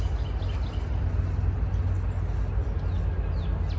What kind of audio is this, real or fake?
real